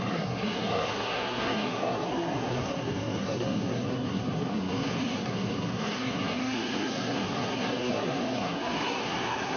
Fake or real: fake